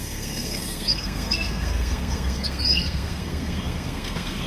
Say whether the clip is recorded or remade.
remade